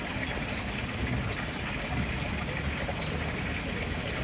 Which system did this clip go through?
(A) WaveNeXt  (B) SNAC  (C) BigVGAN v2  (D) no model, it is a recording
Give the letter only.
D